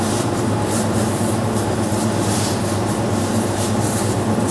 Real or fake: fake